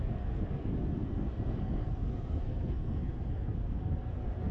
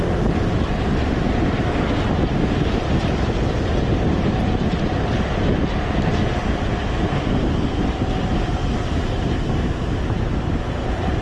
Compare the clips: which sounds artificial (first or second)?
first